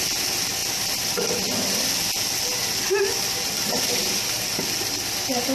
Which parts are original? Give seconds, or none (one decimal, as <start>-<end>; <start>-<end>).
0.0-5.5